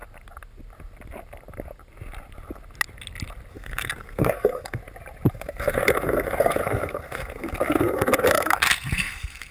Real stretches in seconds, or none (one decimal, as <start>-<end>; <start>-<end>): 0.0-3.5; 4.8-5.3